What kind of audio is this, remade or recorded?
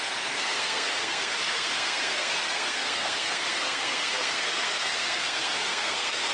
remade